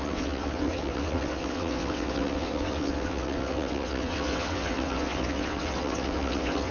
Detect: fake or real fake